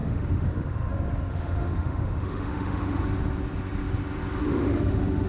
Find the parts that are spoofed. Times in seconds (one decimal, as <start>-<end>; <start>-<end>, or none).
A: 0.0-0.9; 1.3-3.0; 4.4-5.3